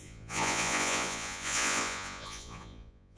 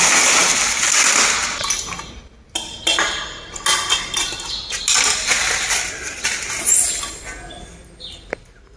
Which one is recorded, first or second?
second